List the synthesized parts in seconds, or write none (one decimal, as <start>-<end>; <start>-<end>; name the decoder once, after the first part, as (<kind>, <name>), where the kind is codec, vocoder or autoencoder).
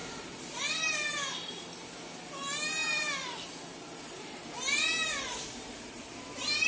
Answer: 0.0-1.6 (vocoder, BigVGAN v2); 2.8-6.0